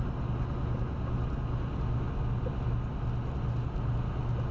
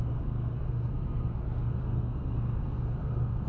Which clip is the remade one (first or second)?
second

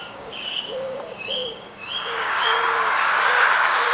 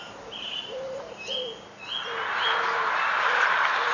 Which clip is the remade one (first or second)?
first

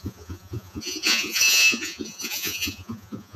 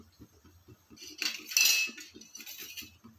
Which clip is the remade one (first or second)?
first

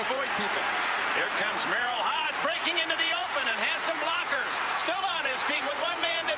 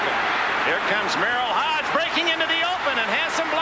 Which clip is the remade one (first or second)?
first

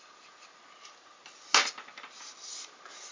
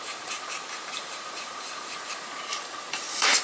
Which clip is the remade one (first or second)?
second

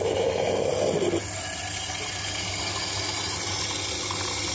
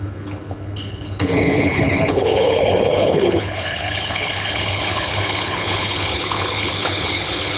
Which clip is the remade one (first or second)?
second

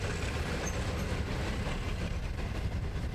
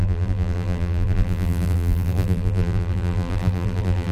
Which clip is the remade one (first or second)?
second